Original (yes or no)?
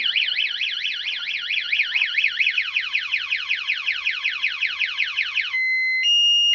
yes